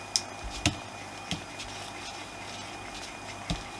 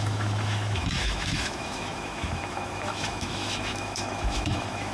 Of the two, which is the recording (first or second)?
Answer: first